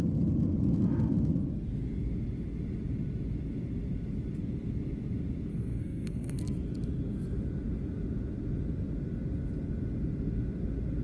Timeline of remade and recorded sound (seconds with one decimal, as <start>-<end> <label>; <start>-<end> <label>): 0.0-5.5 recorded; 5.5-6.4 remade; 6.4-11.0 recorded